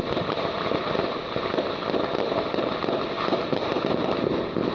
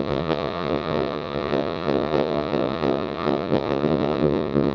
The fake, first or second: second